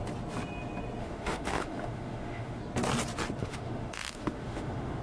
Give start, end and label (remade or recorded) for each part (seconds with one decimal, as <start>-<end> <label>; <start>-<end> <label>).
0.0-1.0 recorded; 1.0-2.6 remade; 2.6-3.4 recorded; 3.4-5.0 remade